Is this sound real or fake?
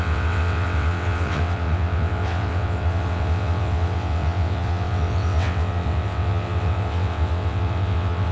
fake